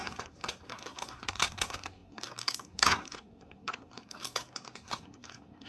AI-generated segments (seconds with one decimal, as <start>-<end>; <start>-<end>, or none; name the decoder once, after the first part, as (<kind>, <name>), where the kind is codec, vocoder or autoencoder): 0.0-5.7 (codec, SNAC)